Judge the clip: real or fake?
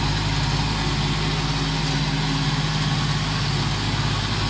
real